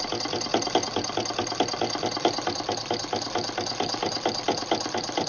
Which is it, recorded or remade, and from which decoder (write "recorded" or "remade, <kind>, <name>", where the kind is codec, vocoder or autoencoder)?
recorded